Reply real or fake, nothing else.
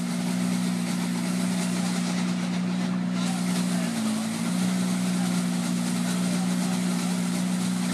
real